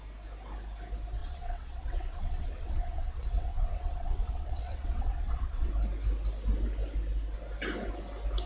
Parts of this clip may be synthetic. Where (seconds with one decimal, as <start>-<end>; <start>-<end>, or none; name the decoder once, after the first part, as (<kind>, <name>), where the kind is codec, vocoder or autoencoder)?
1.2-5.7 (vocoder, WaveNeXt)